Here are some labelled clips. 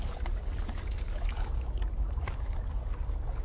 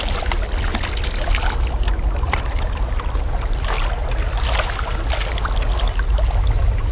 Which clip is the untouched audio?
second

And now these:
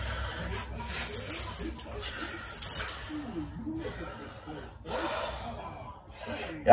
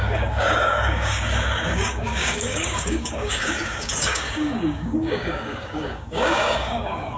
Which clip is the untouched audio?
first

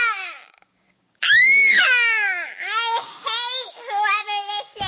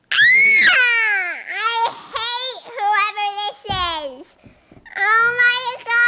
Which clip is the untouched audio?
second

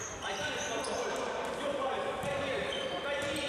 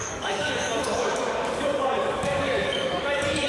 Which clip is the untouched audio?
first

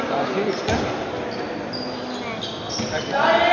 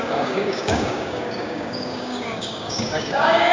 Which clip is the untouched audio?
first